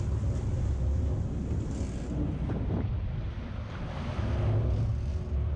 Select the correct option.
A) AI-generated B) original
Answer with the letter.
B